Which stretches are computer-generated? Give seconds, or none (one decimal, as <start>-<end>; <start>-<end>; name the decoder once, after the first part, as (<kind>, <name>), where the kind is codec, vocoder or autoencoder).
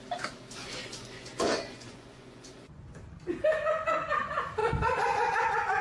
0.6-3.0 (vocoder, Vocos); 3.5-4.1; 4.6-5.8